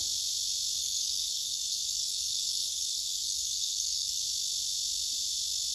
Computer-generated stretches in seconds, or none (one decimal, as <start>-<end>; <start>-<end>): 0.8-4.2